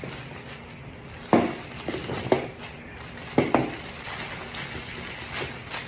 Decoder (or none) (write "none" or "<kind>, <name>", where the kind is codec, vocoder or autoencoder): none